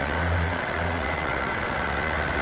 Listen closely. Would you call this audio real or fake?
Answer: fake